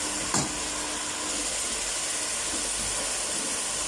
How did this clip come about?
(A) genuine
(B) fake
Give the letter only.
A